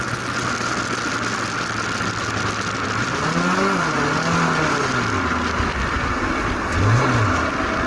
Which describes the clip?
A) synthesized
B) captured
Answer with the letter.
B